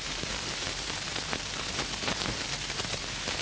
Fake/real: fake